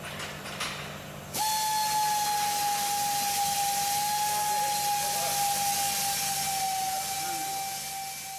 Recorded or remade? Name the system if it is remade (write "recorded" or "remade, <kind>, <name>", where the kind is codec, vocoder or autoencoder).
recorded